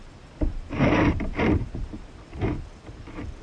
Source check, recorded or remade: remade